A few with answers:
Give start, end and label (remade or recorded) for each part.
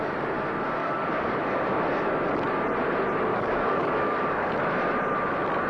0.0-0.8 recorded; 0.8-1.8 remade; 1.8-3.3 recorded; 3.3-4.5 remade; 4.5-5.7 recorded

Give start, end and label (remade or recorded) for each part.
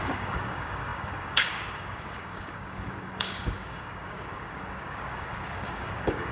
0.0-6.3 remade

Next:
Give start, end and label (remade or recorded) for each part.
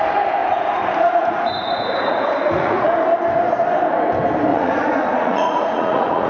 0.0-0.4 recorded; 0.4-3.0 remade; 3.0-4.5 recorded; 4.5-6.3 remade